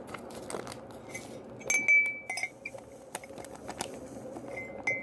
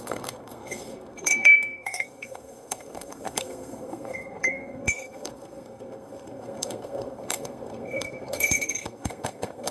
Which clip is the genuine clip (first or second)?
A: first